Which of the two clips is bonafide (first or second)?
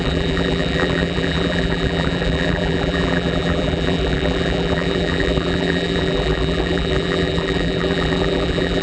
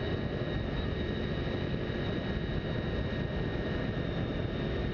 second